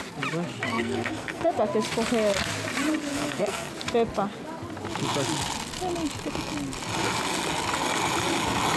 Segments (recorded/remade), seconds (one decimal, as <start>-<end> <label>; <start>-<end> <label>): 0.0-0.7 recorded; 0.7-1.5 remade; 1.5-3.1 recorded; 3.1-3.7 remade; 3.7-8.8 recorded